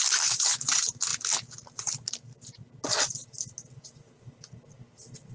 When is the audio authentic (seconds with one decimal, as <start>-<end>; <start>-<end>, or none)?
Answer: 0.0-5.3